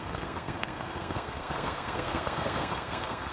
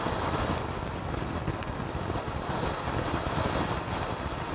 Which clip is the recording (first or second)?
second